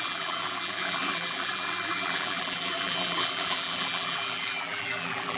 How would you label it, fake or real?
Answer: fake